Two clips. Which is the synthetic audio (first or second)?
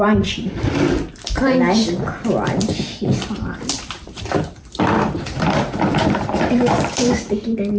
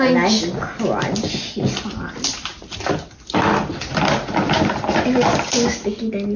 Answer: first